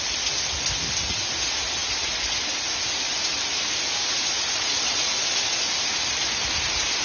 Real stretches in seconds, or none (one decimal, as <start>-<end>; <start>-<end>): 0.0-7.0